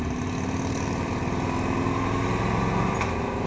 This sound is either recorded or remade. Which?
recorded